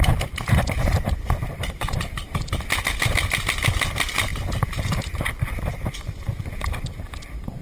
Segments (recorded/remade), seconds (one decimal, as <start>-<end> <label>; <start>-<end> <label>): 0.0-7.6 recorded